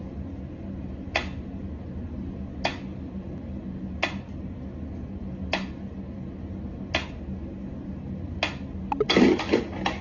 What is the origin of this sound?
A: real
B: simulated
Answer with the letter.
A